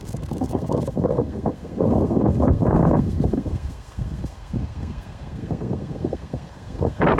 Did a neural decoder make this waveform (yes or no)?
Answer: yes